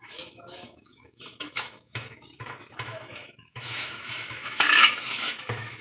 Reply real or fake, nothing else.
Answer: fake